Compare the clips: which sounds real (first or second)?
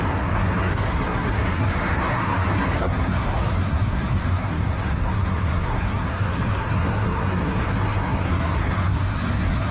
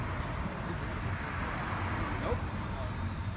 second